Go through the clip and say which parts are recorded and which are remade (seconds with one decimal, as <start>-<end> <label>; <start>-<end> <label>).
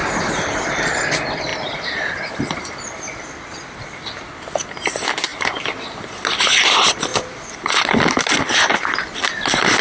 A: 0.0-7.1 remade; 7.1-8.3 recorded; 8.3-9.8 remade